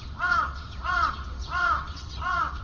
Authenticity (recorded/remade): remade